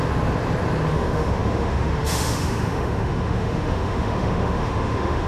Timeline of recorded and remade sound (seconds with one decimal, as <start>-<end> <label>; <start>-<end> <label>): 0.0-0.9 recorded; 0.9-5.3 remade